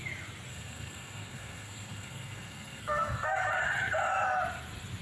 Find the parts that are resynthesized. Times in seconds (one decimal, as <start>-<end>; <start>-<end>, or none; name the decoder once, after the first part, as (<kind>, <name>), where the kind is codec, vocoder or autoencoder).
0.5-3.5 (codec, SNAC)